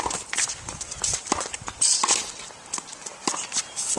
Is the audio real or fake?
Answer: real